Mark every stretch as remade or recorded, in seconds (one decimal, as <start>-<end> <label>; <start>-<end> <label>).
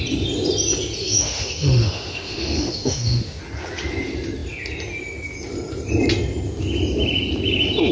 0.0-1.0 recorded; 1.0-3.4 remade; 3.4-7.9 recorded